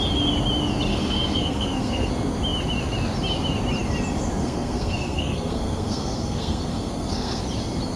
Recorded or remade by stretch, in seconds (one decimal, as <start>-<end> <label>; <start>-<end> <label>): 0.0-0.9 recorded; 0.9-2.1 remade; 2.1-4.4 recorded; 4.4-7.4 remade; 7.4-8.0 recorded